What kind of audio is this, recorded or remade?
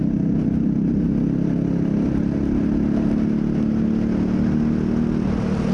recorded